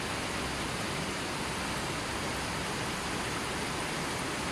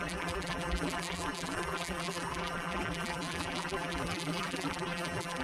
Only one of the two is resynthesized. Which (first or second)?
second